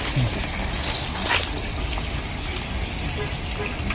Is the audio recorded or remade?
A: recorded